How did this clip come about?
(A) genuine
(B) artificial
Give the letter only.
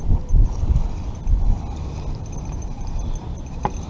A